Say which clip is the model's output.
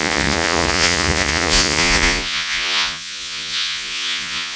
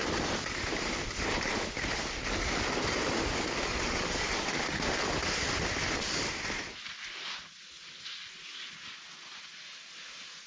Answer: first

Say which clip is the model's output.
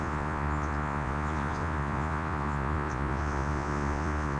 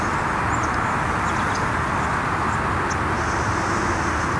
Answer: first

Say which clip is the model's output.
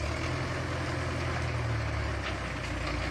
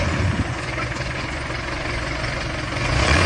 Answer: second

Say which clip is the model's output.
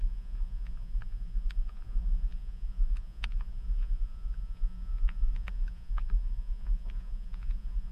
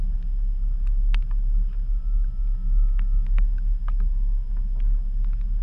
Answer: first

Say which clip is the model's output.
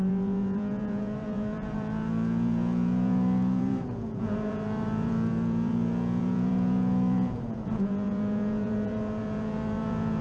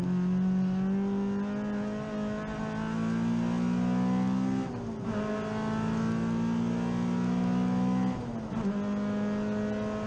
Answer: first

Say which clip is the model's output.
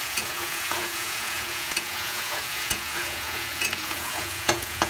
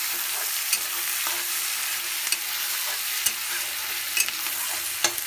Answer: first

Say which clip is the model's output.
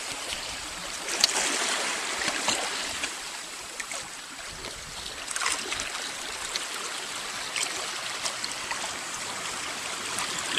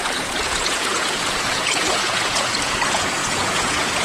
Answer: second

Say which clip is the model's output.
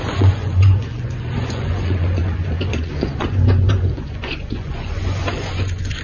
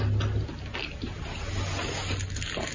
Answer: first